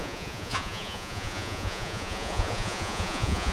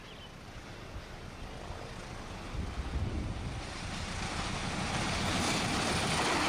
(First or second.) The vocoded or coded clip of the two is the first